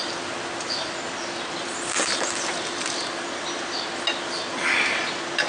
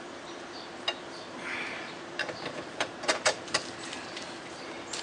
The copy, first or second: second